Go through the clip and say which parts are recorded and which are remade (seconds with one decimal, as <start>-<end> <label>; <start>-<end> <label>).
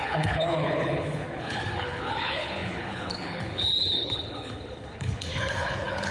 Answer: 0.0-6.1 remade